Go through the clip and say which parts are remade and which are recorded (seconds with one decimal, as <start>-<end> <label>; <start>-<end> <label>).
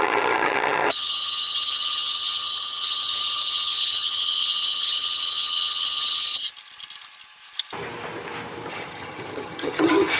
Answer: 0.0-6.4 remade; 6.4-8.7 recorded; 8.7-10.2 remade